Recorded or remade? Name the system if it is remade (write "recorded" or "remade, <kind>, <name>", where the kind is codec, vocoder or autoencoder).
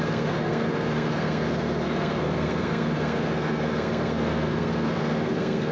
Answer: remade, codec, SNAC